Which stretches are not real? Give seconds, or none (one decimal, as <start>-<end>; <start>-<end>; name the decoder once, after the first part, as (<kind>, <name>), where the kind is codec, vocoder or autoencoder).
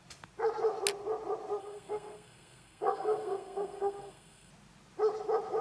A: 1.6-4.5 (codec, SNAC)